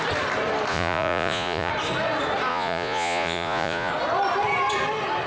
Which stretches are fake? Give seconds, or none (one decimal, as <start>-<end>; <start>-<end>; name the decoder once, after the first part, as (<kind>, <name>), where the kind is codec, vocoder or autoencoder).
0.7-1.7 (vocoder, Vocos); 2.5-3.9